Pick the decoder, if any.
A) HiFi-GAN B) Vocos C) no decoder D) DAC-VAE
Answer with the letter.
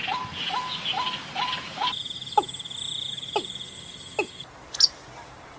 C